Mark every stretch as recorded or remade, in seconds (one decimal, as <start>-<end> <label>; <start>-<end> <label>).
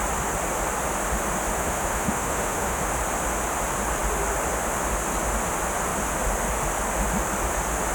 0.0-1.6 recorded; 1.6-2.8 remade; 2.8-7.9 recorded